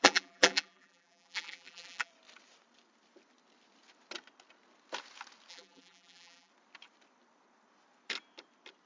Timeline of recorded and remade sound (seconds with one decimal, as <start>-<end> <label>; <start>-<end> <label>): 0.0-2.1 remade; 2.1-5.5 recorded; 5.5-6.5 remade; 6.5-8.9 recorded